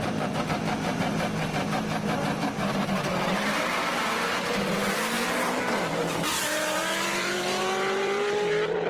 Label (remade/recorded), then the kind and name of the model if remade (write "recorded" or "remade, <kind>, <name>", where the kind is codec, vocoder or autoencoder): remade, vocoder, BigVGAN v2